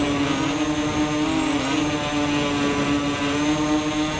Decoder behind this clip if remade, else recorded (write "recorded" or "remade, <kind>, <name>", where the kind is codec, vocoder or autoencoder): recorded